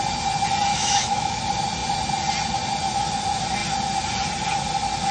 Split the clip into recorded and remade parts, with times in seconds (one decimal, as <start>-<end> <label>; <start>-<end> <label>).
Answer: 0.0-0.7 recorded; 0.7-1.4 remade; 1.4-5.1 recorded